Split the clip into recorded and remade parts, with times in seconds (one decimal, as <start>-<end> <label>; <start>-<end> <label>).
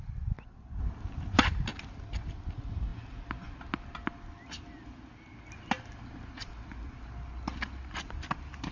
0.0-8.7 recorded